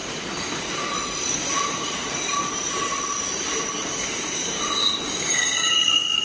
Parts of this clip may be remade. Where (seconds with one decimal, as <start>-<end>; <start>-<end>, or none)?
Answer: 3.7-6.2